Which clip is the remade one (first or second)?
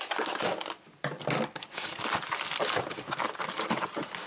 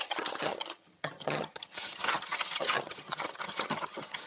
second